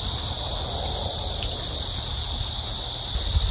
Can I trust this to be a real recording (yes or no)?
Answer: yes